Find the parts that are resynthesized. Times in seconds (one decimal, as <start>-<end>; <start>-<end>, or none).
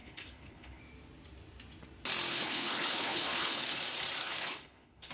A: 0.0-0.8; 2.3-3.8; 4.2-5.1